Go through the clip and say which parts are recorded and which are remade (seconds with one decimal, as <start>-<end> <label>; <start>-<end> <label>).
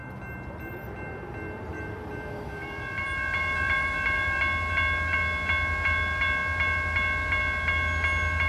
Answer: 0.0-1.7 recorded; 1.7-4.4 remade; 4.4-8.5 recorded